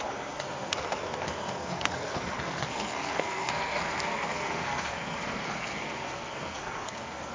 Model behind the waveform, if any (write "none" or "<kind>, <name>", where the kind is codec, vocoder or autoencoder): codec, SNAC